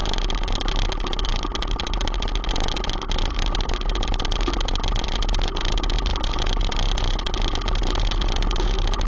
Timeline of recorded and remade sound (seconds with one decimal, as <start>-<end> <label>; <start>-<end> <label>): 0.0-0.7 remade; 0.7-9.1 recorded